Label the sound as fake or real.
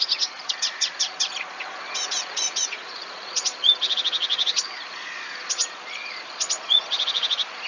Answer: fake